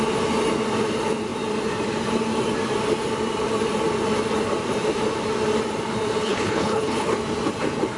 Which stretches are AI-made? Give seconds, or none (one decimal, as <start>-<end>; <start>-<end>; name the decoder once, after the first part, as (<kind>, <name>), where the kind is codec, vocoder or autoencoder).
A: 6.2-7.1 (codec, HILCodec)